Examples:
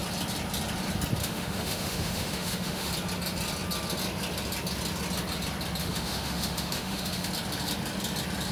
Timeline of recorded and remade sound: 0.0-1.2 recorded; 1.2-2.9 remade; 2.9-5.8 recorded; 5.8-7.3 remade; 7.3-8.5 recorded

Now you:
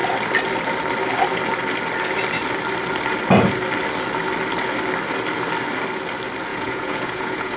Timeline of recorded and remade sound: 0.0-6.5 recorded; 6.5-7.6 remade

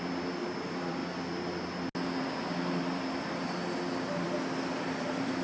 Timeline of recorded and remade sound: 0.0-1.0 remade; 1.0-2.8 recorded; 2.8-3.6 remade; 3.6-4.1 recorded; 4.1-5.4 remade

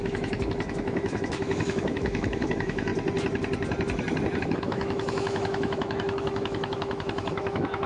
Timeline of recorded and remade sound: 0.0-2.9 remade; 2.9-4.4 recorded; 4.4-7.9 remade